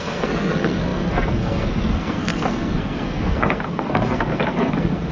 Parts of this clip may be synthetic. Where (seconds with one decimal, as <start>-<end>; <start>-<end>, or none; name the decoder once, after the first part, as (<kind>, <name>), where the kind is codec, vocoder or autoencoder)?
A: 0.0-5.1 (codec, SNAC)